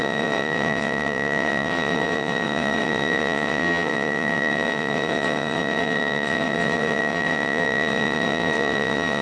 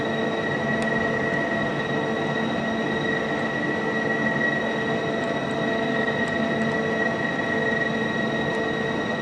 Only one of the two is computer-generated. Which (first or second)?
first